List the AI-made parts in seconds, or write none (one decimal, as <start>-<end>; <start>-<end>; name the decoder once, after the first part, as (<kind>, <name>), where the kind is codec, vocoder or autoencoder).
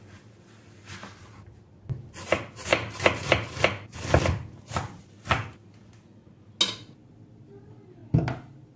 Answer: none